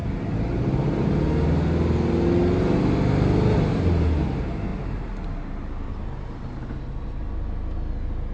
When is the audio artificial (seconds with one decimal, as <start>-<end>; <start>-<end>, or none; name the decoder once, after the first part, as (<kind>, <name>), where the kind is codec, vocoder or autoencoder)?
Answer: 0.0-1.0 (vocoder, BigVGAN v2)